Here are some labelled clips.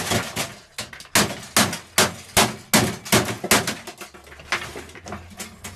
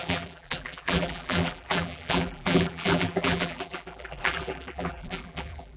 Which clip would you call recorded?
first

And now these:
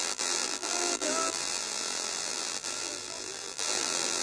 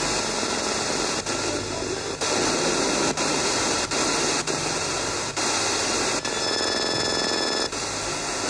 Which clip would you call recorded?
second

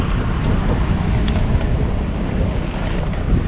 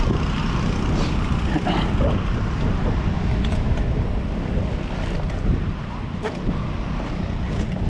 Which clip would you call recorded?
second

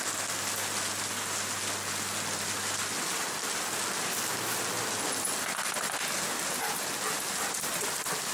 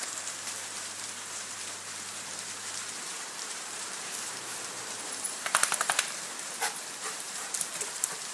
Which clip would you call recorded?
first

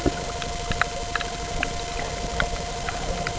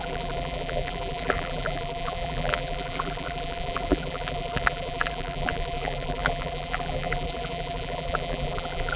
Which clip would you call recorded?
first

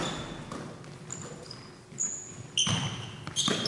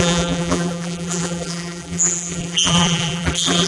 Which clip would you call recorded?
first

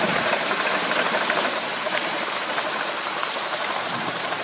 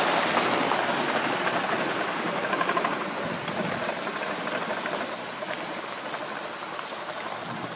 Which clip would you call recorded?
second